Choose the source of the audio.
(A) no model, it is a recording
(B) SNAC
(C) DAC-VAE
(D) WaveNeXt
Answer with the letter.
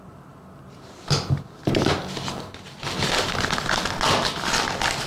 A